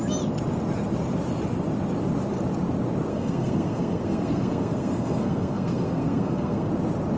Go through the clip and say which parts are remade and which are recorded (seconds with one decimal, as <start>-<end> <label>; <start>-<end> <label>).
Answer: 0.0-3.1 recorded; 3.1-6.7 remade; 6.7-7.2 recorded